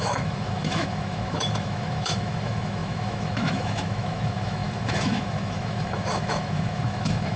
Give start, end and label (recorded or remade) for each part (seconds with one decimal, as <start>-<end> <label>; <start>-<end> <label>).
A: 0.0-7.4 remade